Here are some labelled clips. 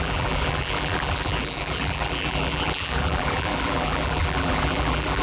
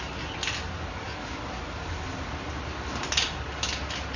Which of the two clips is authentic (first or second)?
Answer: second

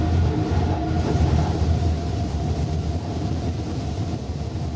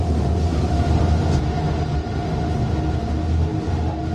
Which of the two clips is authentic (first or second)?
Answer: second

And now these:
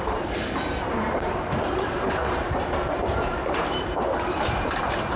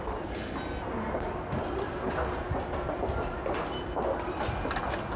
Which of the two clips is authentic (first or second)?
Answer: second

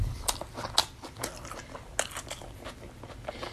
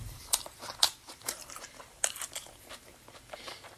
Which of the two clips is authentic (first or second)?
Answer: first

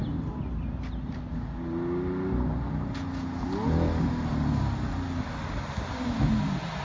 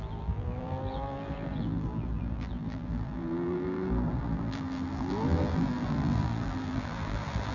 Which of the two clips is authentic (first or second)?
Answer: first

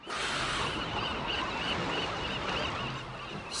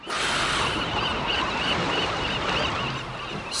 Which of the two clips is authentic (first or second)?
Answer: first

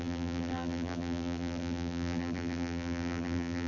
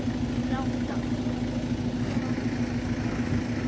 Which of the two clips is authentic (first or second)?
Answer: second